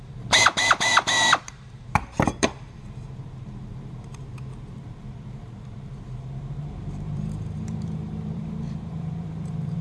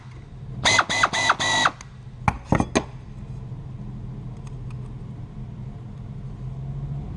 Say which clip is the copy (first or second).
first